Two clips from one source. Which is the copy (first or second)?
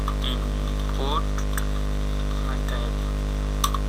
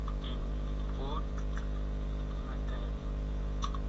second